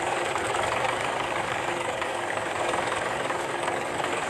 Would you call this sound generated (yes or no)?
yes